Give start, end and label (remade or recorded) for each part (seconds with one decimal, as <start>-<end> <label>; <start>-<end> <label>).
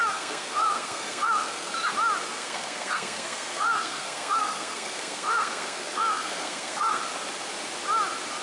0.0-1.7 remade; 1.7-2.3 recorded; 2.3-7.0 remade; 7.0-8.4 recorded